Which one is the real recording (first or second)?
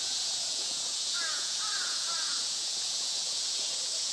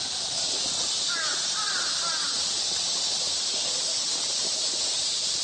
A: second